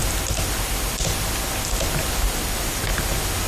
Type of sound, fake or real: real